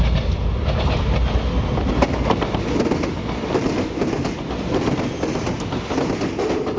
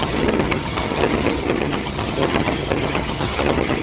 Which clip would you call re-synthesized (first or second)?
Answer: second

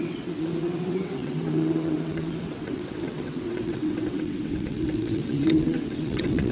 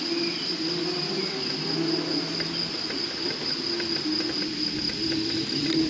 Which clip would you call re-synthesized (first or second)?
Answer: first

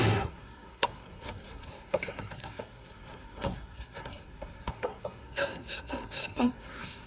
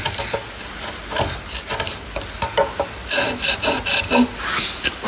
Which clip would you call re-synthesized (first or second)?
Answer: first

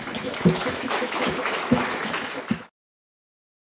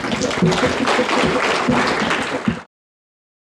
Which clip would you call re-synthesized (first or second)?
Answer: first